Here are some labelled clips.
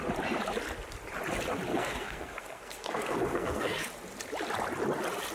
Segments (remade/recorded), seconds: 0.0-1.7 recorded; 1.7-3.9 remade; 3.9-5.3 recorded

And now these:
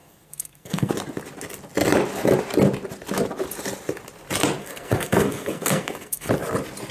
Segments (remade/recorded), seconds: 0.0-0.9 remade; 0.9-4.6 recorded; 4.6-6.3 remade; 6.3-6.9 recorded